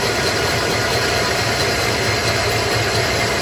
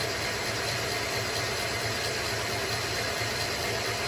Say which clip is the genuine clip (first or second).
second